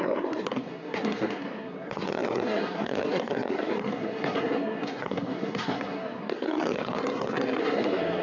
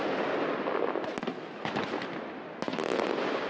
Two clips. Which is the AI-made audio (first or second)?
first